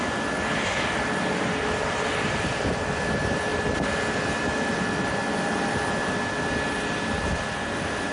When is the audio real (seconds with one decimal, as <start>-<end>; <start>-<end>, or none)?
0.0-8.1